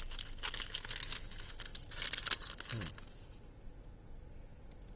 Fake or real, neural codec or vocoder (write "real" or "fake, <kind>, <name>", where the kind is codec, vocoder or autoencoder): real